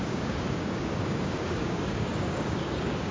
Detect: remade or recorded remade